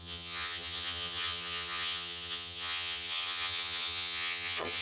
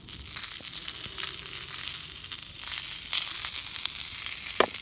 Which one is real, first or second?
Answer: second